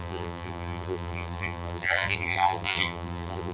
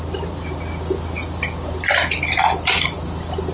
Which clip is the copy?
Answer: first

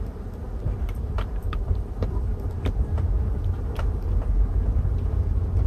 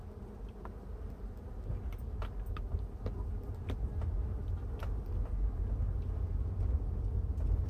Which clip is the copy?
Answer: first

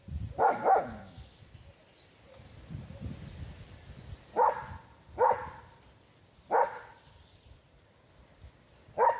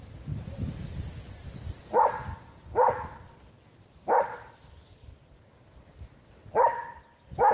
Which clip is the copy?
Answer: first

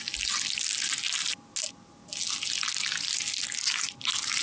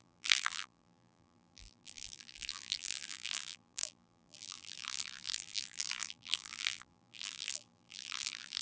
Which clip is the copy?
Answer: second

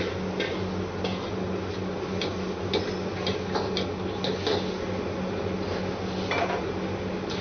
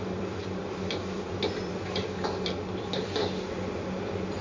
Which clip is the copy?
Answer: second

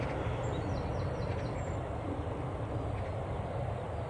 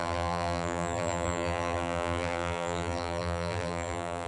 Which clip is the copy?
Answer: second